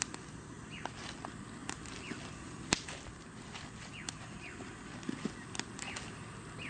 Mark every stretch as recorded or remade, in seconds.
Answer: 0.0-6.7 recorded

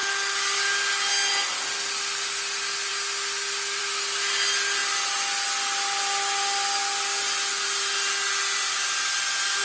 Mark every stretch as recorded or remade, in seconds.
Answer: 0.0-9.6 recorded

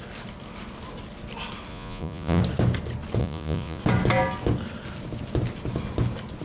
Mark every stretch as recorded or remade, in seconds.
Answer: 0.0-1.7 recorded; 1.7-2.4 remade; 2.4-3.2 recorded; 3.2-3.8 remade; 3.8-6.4 recorded

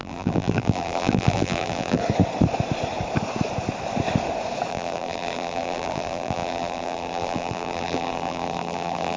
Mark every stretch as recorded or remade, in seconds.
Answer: 0.0-2.0 remade; 2.0-4.7 recorded; 4.7-9.2 remade

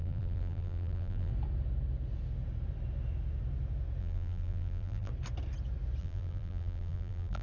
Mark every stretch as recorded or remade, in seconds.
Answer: 0.0-1.3 remade; 1.3-4.0 recorded; 4.0-5.1 remade; 5.1-6.0 recorded; 6.0-7.4 remade

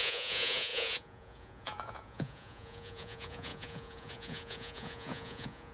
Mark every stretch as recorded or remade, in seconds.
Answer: 0.0-5.7 remade

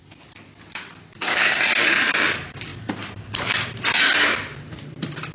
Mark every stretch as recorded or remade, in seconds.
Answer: 0.0-2.0 remade; 2.0-4.3 recorded; 4.3-5.3 remade